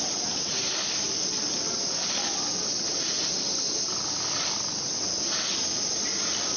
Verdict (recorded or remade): recorded